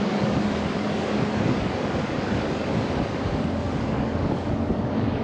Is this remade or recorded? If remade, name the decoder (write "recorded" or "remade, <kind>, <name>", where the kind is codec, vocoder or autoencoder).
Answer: remade, codec, DAC